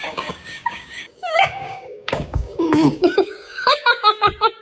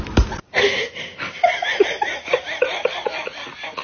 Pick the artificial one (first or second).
first